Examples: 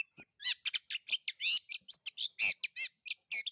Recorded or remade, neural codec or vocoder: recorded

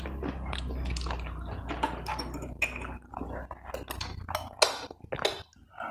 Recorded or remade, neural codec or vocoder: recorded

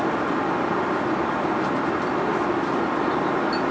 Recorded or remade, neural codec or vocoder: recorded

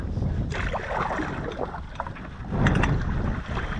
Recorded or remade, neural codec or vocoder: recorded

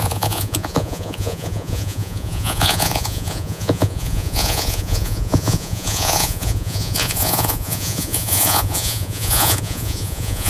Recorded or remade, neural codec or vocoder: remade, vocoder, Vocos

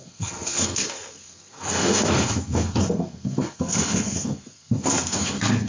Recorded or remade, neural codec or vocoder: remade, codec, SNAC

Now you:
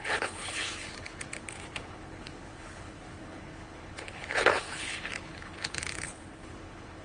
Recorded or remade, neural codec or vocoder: remade, codec, HILCodec